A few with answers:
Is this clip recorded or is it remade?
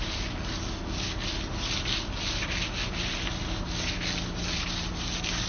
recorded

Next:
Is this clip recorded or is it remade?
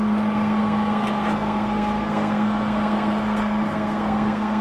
remade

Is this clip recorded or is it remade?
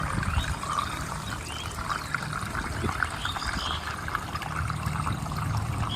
recorded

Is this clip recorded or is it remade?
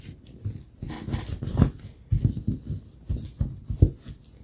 recorded